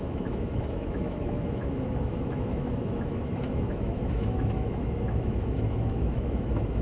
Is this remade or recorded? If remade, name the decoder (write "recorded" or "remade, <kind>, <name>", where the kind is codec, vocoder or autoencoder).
remade, autoencoder, DAC-VAE